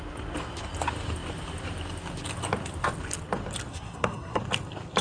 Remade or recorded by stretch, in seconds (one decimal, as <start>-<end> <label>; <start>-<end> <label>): 0.0-3.7 recorded; 3.7-4.4 remade; 4.4-5.0 recorded